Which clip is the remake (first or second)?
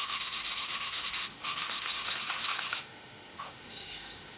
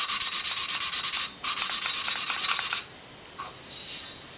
first